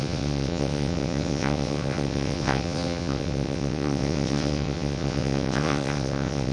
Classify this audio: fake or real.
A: fake